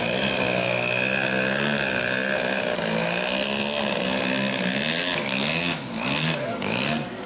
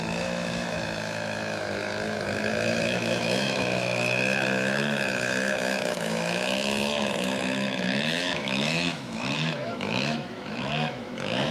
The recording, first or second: first